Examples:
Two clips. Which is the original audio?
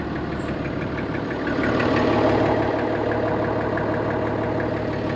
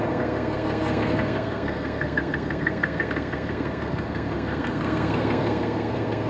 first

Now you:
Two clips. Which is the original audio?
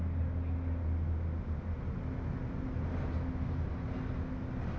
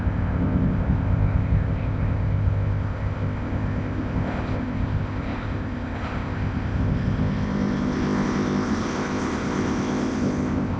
first